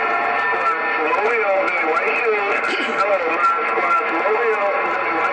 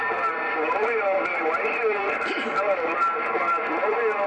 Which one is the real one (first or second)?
first